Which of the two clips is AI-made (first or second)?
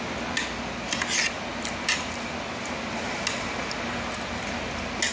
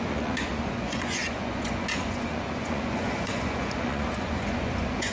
second